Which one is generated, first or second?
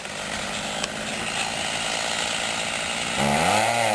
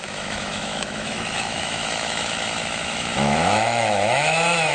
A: second